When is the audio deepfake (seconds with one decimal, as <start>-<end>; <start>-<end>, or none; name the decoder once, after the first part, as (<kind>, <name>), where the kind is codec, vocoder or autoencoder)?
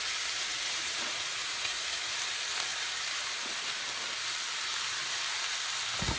0.5-2.1 (vocoder, Vocos)